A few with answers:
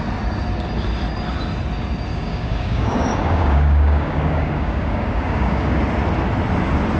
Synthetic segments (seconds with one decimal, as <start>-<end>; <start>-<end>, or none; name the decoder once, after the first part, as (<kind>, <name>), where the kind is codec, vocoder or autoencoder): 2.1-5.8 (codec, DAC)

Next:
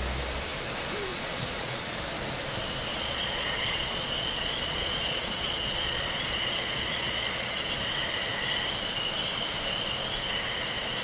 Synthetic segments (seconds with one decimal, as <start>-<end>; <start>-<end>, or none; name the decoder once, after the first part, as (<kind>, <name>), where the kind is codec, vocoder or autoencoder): 1.1-2.0 (vocoder, Vocos); 2.9-7.6

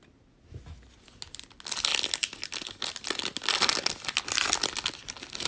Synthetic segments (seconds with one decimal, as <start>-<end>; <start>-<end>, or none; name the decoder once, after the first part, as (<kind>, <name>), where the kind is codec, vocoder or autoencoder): none

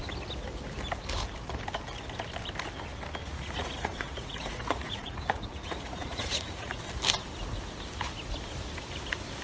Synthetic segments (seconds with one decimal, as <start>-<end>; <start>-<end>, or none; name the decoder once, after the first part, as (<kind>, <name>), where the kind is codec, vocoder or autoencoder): 3.2-6.8 (vocoder, Vocos)

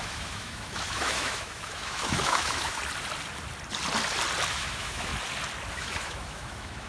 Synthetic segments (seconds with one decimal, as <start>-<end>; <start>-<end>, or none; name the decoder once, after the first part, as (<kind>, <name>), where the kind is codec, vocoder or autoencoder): 0.0-2.8 (autoencoder, DAC-VAE); 4.5-5.1; 5.7-6.9

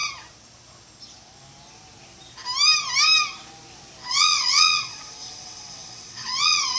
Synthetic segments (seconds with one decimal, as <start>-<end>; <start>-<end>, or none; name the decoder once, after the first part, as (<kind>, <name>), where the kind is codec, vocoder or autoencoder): 4.1-6.8 (vocoder, WaveNeXt)

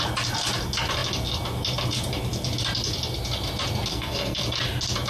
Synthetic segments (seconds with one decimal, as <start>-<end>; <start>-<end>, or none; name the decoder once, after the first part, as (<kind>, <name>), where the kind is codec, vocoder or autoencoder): 3.9-4.4 (codec, SNAC)